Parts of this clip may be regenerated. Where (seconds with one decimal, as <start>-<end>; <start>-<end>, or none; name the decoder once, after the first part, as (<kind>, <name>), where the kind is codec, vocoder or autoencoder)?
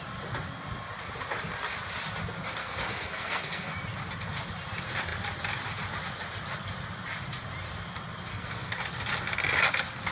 2.6-3.7 (codec, SNAC); 8.3-8.8